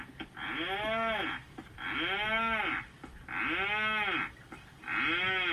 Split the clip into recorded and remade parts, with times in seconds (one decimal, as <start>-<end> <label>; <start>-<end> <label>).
0.0-5.5 recorded